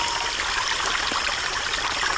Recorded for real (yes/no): yes